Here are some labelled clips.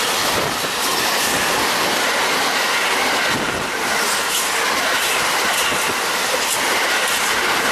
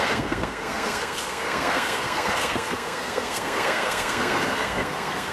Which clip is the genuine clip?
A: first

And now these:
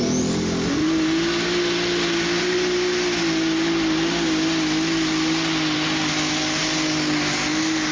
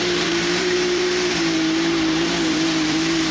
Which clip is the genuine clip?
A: first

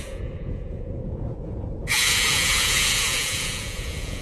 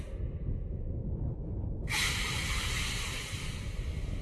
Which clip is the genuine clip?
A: second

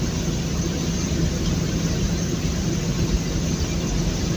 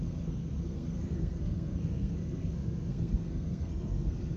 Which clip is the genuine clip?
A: first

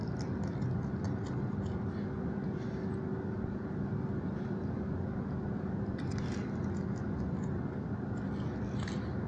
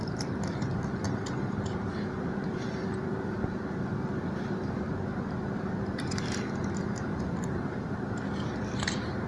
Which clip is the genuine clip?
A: first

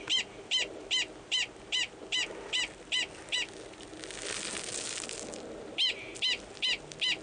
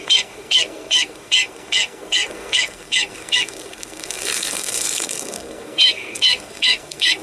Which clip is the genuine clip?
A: first